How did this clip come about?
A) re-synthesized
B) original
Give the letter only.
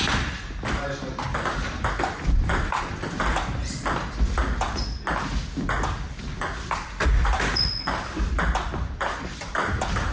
B